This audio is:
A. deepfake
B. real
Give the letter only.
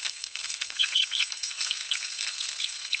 A